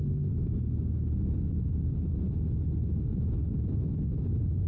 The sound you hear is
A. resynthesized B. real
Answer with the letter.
B